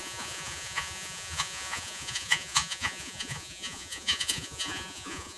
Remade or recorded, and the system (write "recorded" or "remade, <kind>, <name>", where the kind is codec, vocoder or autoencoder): remade, vocoder, Vocos